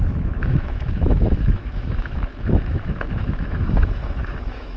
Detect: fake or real fake